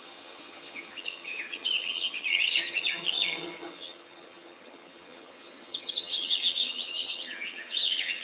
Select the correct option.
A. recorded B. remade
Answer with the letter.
B